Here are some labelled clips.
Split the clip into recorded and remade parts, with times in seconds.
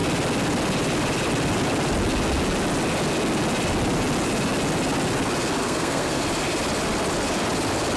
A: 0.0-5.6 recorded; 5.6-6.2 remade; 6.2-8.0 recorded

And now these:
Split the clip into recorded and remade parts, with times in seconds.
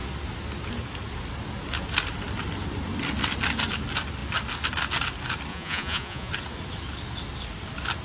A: 0.0-5.5 recorded; 5.5-6.3 remade; 6.3-8.0 recorded